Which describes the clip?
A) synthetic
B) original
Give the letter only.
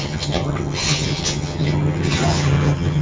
A